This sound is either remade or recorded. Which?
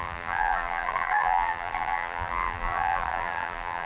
remade